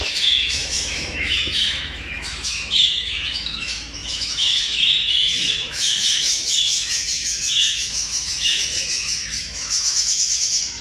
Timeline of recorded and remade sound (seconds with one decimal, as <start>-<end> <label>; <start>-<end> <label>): 0.0-10.8 remade